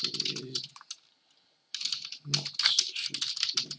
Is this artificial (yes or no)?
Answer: no